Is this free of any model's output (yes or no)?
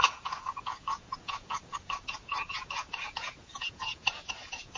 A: no